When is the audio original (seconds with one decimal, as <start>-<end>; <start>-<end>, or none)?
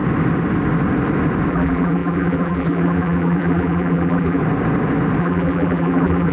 0.0-1.5; 4.4-5.2